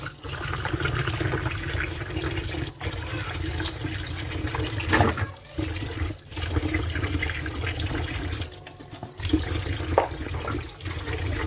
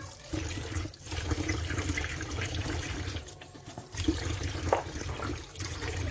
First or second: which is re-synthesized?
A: second